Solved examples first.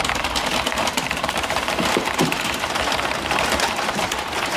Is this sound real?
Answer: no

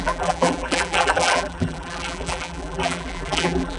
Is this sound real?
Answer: no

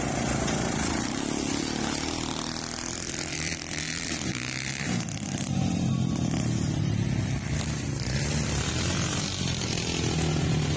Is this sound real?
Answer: no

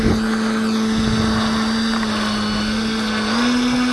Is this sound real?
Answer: yes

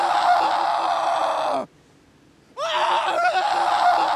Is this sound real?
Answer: yes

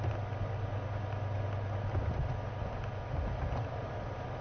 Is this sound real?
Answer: yes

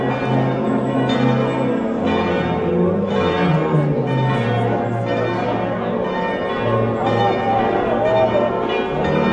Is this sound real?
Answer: yes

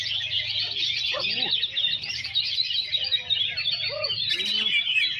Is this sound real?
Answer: yes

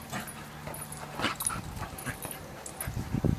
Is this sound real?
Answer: yes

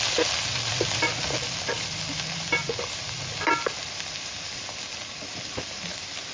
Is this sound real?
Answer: yes